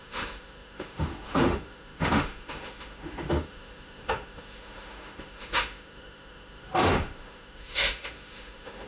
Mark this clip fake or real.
fake